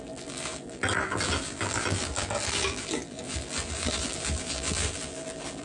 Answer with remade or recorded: remade